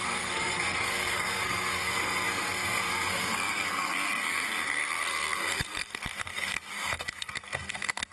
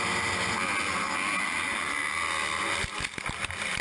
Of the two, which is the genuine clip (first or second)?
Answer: second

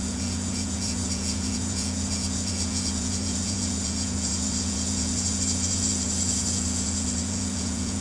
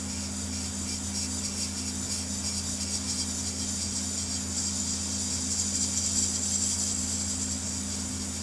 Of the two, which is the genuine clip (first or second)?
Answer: second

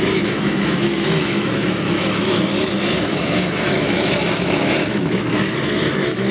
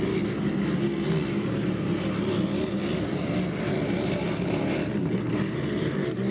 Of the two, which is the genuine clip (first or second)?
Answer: second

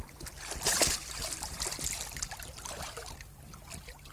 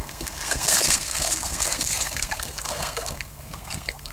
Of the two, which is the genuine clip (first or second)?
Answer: first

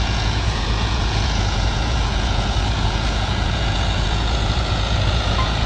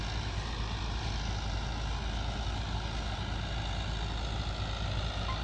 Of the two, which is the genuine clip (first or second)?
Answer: second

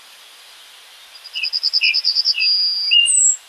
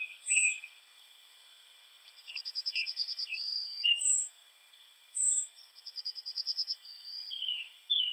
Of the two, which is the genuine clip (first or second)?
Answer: first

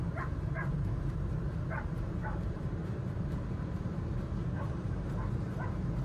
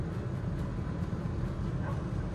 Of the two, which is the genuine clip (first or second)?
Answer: second